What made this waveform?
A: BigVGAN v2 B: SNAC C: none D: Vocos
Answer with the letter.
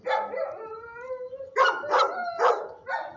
C